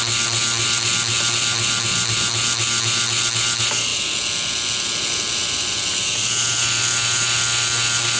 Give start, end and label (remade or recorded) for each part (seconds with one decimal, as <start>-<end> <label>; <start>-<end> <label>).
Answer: 0.0-8.2 recorded